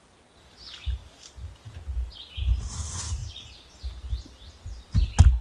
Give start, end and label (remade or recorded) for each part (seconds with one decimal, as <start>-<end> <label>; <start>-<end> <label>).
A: 0.0-5.4 recorded